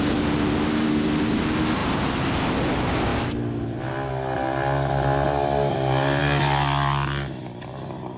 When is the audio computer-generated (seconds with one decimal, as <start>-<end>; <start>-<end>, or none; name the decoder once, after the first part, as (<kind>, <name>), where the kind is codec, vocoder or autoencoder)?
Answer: none